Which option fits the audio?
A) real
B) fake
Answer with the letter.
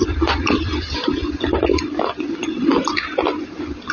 A